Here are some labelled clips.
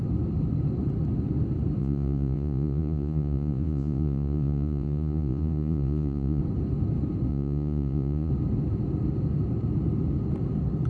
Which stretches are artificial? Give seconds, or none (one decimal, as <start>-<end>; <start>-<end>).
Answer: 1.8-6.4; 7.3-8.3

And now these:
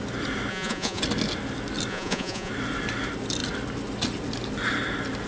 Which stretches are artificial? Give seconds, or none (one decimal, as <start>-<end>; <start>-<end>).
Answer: 0.5-1.0; 1.9-2.5

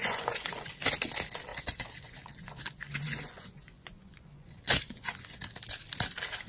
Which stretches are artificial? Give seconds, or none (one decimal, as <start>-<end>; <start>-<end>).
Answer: 0.0-0.7; 1.5-5.4

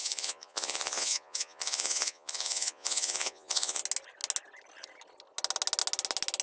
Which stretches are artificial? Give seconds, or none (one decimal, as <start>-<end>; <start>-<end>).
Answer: 0.0-3.8

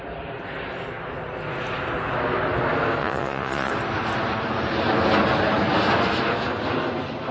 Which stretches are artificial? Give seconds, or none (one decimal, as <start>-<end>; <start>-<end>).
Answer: 3.0-3.7

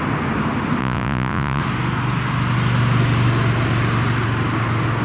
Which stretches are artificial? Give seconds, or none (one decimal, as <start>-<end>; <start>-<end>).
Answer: 0.8-1.6

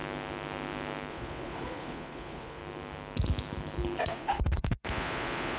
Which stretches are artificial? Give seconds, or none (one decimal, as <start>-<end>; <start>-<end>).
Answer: 1.1-2.6; 4.0-5.6

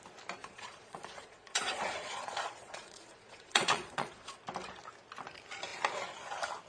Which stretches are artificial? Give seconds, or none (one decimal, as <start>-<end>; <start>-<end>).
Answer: 0.4-4.4